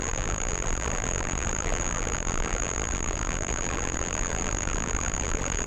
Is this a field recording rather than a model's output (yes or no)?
no